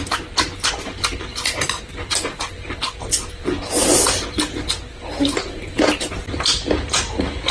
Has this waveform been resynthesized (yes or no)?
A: no